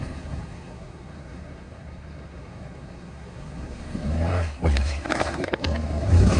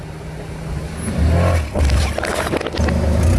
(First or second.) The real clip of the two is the second